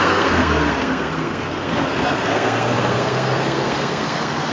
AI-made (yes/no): yes